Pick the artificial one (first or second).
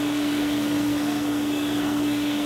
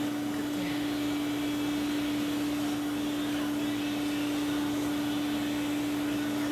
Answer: first